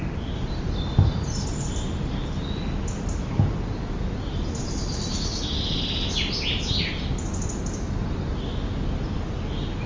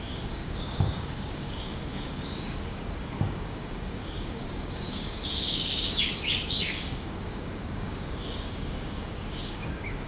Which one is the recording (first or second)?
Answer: first